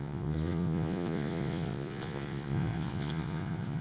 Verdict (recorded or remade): remade